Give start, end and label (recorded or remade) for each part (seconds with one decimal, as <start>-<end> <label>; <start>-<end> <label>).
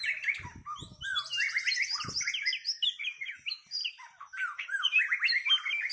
0.0-3.8 recorded; 3.8-5.0 remade; 5.0-5.9 recorded